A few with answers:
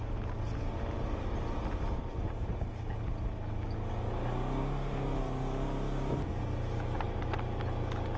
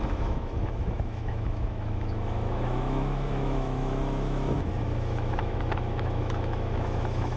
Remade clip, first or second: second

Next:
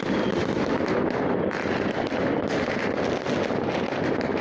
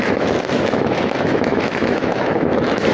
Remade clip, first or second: second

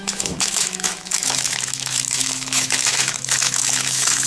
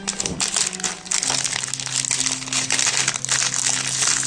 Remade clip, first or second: first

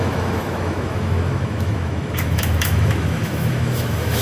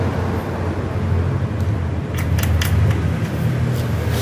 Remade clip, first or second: first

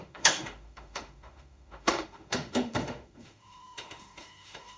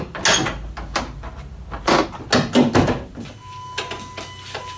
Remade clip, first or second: first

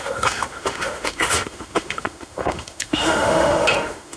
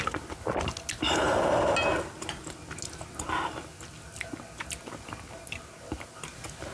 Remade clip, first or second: first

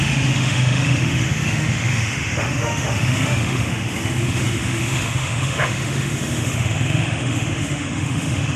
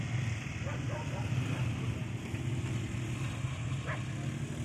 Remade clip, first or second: first